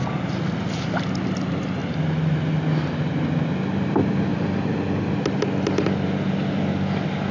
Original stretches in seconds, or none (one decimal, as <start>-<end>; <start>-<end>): 0.0-7.3